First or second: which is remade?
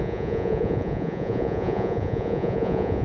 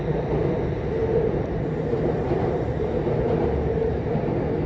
first